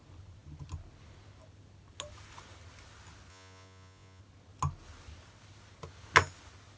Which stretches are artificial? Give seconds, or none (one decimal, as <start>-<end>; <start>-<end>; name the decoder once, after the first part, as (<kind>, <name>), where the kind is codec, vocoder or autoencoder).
3.3-4.2 (vocoder, Vocos)